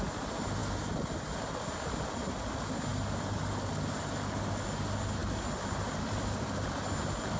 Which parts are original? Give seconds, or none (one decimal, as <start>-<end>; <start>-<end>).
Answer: 0.0-7.4